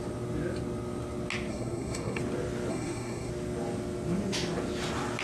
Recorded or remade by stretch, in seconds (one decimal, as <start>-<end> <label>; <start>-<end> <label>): 0.0-1.5 recorded; 1.5-2.2 remade; 2.2-2.7 recorded; 2.7-3.3 remade; 3.3-5.2 recorded